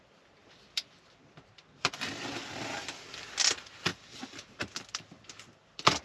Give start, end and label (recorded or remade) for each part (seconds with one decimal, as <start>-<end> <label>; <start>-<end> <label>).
0.0-0.4 recorded; 0.4-2.4 remade; 2.4-3.9 recorded; 3.9-6.0 remade

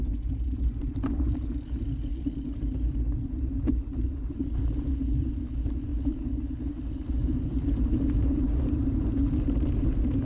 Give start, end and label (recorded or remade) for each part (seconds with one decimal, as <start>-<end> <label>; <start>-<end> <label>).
0.0-5.9 remade; 5.9-6.7 recorded; 6.7-10.2 remade

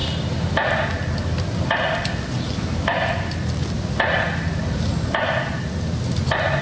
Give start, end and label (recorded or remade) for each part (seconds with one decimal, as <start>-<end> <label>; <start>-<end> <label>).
0.0-6.6 recorded

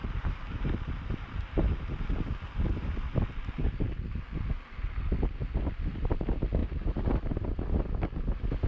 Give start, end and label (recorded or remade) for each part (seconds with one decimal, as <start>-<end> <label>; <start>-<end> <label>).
0.0-0.6 remade; 0.6-6.6 recorded; 6.6-7.7 remade; 7.7-8.7 recorded

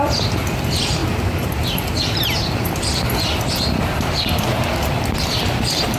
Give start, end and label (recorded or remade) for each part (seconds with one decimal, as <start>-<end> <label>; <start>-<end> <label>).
0.0-6.0 recorded

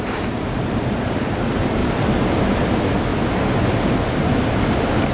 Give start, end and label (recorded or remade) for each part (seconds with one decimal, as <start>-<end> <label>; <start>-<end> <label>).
0.0-3.1 remade; 3.1-4.2 recorded; 4.2-5.1 remade

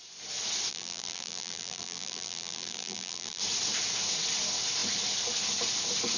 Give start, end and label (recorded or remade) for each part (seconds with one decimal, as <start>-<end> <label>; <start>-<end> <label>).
0.0-0.7 recorded; 0.7-3.4 remade; 3.4-6.2 recorded

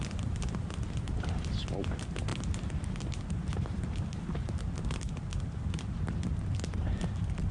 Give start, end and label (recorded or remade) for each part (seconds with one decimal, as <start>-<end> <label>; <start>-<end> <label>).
0.0-7.5 recorded